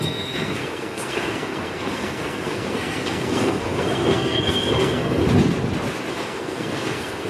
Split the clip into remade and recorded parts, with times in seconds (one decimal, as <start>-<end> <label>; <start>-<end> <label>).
0.0-5.2 remade; 5.2-6.1 recorded; 6.1-7.3 remade